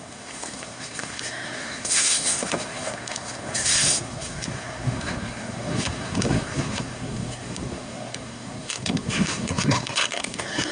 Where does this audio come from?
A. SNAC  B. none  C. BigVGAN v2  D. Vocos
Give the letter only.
A